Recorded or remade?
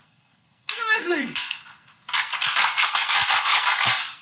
remade